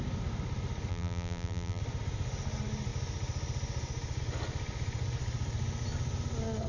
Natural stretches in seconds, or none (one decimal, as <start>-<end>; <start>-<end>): 0.0-0.9; 1.8-6.7